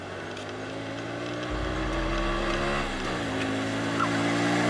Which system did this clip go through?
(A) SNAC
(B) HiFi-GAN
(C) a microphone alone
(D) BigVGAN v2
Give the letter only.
C